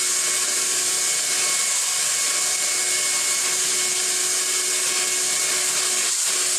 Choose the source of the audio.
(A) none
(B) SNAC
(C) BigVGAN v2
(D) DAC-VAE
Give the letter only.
A